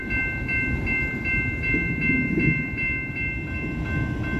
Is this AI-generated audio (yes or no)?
no